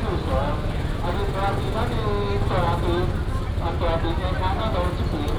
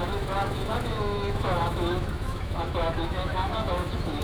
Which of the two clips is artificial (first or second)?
second